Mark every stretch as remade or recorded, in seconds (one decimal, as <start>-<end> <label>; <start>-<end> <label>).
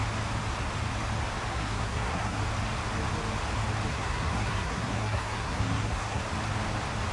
0.0-1.5 recorded; 1.5-2.4 remade; 2.4-3.9 recorded; 3.9-6.2 remade; 6.2-7.1 recorded